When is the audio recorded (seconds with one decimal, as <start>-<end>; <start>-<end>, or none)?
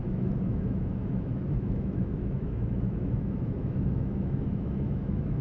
none